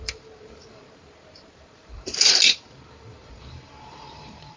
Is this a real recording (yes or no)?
no